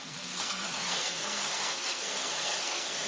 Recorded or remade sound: remade